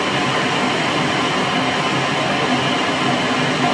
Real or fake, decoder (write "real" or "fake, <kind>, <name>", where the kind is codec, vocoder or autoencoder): real